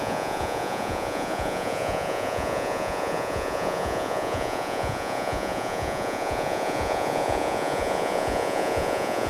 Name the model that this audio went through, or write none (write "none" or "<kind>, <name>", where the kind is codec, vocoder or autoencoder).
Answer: vocoder, Vocos